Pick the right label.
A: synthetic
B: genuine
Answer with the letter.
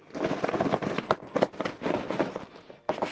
B